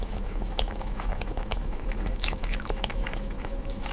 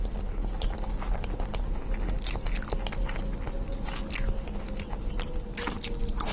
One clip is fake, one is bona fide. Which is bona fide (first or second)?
second